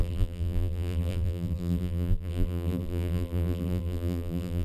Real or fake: fake